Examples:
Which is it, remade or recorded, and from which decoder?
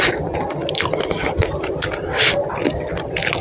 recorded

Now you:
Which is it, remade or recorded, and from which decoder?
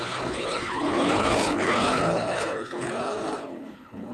remade, codec, HILCodec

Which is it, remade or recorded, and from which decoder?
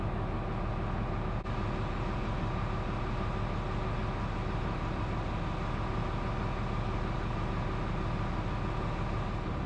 recorded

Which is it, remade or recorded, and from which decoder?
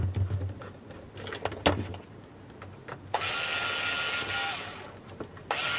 recorded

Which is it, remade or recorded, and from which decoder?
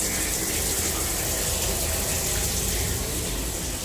recorded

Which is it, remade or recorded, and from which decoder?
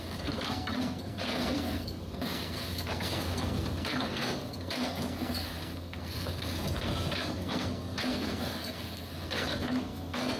remade, codec, SNAC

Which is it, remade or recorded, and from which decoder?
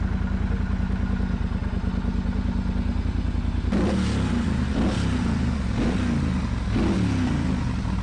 recorded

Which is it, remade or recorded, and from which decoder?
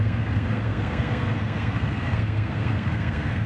remade, codec, SNAC